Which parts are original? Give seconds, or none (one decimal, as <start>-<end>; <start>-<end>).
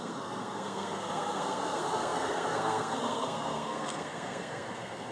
none